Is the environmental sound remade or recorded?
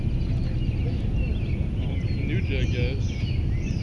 recorded